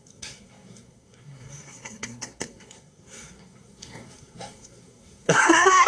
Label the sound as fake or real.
fake